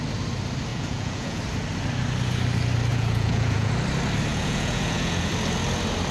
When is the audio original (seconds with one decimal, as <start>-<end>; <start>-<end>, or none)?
0.0-0.7; 1.4-2.9; 3.7-4.3; 5.3-6.1